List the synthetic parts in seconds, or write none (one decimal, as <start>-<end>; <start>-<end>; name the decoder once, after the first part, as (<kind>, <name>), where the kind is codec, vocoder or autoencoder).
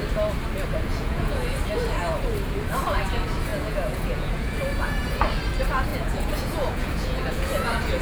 0.9-1.6 (vocoder, Vocos); 3.5-5.2; 5.9-8.0